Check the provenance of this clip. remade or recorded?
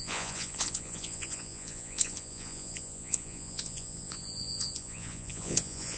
remade